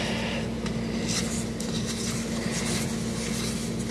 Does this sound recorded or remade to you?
recorded